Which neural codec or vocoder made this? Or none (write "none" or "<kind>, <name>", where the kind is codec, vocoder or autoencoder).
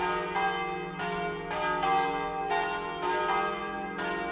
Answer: none